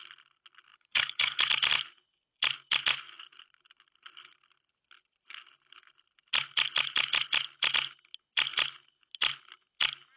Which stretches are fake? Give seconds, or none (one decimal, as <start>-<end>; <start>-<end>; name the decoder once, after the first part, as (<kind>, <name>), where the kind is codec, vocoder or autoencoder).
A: 0.7-1.5 (codec, HILCodec)